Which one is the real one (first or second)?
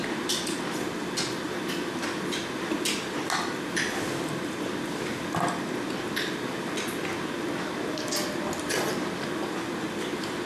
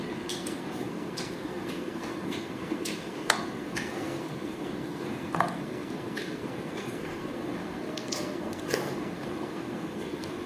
first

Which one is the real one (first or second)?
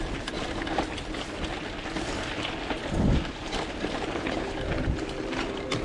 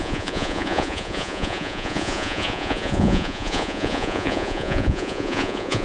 first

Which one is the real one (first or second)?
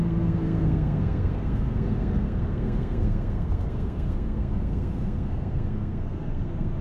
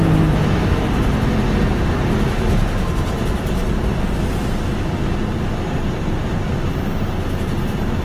second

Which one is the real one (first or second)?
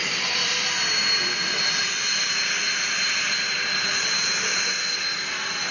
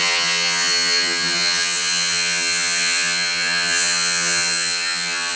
first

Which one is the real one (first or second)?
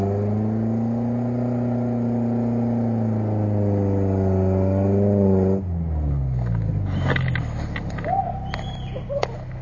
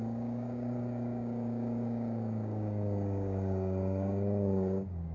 first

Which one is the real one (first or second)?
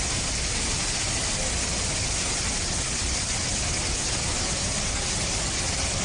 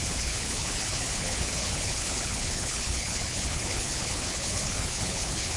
first